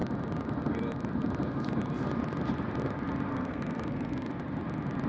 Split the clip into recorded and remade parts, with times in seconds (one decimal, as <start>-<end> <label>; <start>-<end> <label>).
0.0-3.3 recorded; 3.3-4.3 remade; 4.3-5.1 recorded